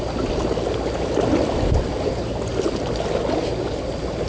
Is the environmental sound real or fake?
real